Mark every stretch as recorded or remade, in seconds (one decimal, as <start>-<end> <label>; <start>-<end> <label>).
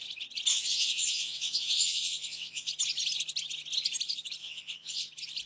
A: 0.0-0.5 recorded; 0.5-2.7 remade; 2.7-4.4 recorded; 4.4-5.1 remade; 5.1-5.5 recorded